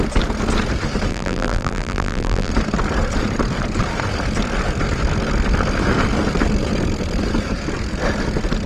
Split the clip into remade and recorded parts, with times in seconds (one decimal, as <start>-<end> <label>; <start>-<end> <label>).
0.0-1.1 recorded; 1.1-2.5 remade; 2.5-8.7 recorded